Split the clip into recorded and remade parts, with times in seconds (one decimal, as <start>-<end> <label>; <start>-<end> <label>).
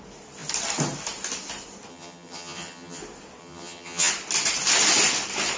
0.0-1.9 recorded; 1.9-3.0 remade; 3.0-3.4 recorded; 3.4-4.1 remade; 4.1-5.6 recorded